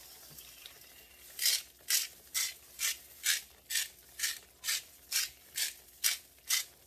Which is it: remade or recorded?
recorded